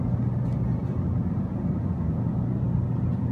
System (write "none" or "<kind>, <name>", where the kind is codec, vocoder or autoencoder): none